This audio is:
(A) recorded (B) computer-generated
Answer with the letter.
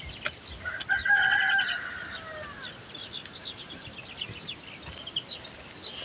A